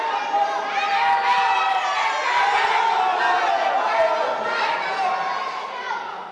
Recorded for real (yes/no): yes